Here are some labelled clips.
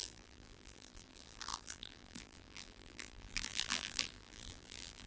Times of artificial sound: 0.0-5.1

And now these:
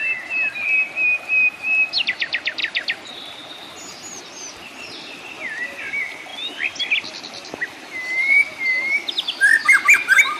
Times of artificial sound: none

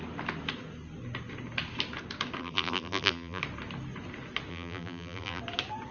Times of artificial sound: 2.4-3.4; 4.5-5.4

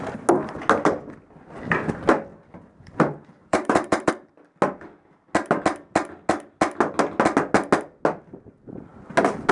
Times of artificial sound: 2.3-4.1

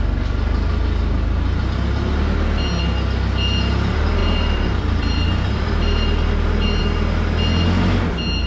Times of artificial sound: 4.2-6.8

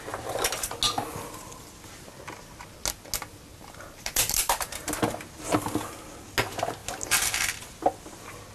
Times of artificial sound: 3.5-4.9

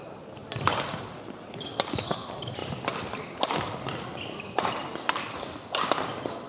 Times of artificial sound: 0.4-1.0